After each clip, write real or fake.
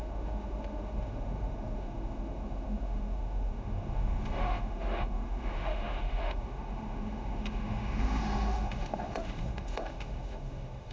fake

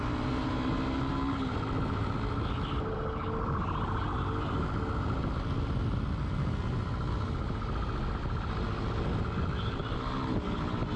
real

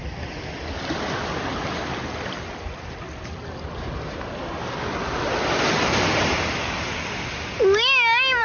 real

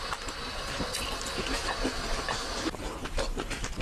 real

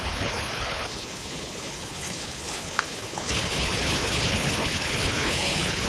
fake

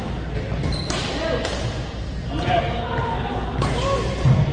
real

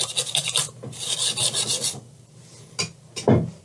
real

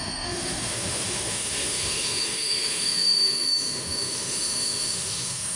fake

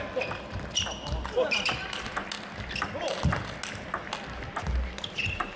real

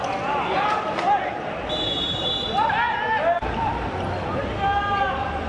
real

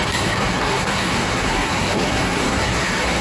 fake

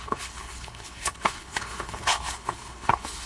fake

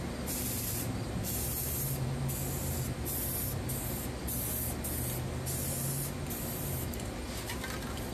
real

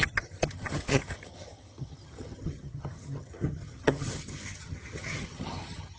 fake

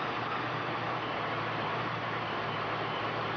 real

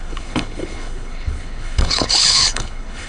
fake